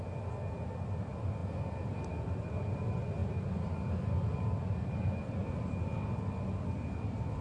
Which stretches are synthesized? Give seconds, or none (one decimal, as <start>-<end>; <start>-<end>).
3.2-5.5